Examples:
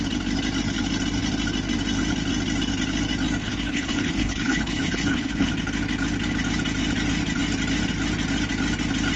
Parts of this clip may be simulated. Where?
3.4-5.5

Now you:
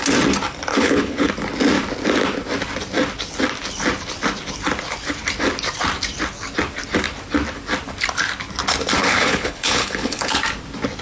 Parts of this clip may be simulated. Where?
0.7-1.3; 9.0-10.4

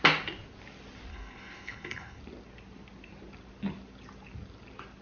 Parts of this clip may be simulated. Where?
1.1-2.2